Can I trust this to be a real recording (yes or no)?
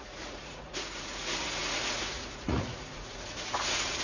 no